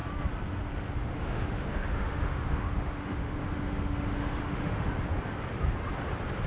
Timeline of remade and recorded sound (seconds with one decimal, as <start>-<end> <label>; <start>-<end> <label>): 0.0-1.0 recorded; 1.0-4.9 remade; 4.9-6.5 recorded